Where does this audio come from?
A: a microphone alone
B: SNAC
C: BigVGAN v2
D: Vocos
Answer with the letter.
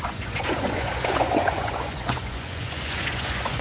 D